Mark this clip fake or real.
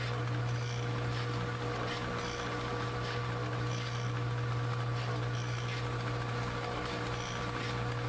real